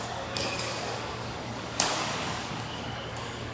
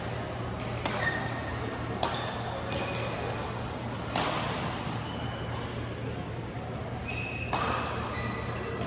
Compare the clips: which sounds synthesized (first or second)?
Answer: first